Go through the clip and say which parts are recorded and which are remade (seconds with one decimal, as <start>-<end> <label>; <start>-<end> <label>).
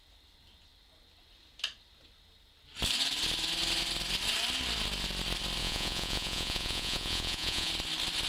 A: 0.0-5.6 recorded; 5.6-7.7 remade; 7.7-8.3 recorded